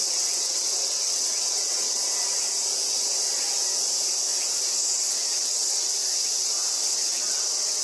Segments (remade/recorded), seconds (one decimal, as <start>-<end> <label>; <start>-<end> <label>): 0.0-2.0 remade; 2.0-5.1 recorded; 5.1-5.9 remade; 5.9-6.8 recorded; 6.8-7.8 remade